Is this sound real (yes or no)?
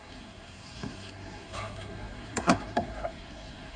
no